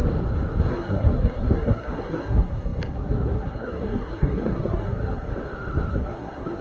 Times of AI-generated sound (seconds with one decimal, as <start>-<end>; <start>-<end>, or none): 0.7-5.3; 5.9-6.6